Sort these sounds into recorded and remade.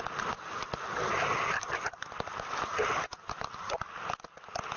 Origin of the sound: recorded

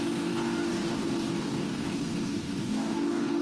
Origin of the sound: remade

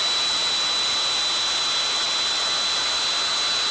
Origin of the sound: recorded